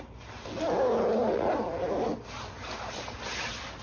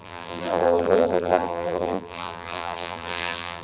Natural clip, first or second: first